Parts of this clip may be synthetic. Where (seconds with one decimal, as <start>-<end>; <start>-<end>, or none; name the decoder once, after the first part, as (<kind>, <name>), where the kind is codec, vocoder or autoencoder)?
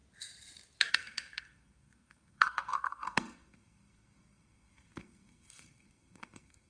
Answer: 0.9-6.7 (codec, SNAC)